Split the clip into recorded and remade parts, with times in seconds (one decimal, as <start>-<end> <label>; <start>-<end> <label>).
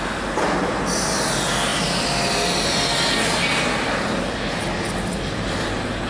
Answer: 0.0-6.1 recorded